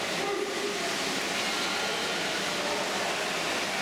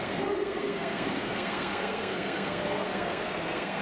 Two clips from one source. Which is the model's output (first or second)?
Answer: second